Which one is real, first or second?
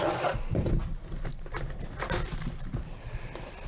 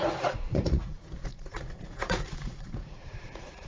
first